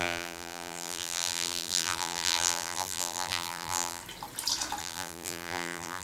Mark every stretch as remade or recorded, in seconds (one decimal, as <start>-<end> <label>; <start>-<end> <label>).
0.0-4.0 remade; 4.0-4.8 recorded; 4.8-6.0 remade